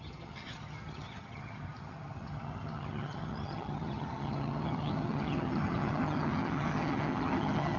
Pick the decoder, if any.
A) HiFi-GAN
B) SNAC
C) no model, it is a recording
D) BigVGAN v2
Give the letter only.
A